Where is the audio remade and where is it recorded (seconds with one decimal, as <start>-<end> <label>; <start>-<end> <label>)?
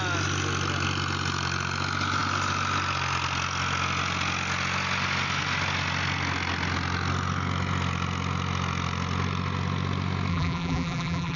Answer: 0.0-10.3 recorded; 10.3-11.4 remade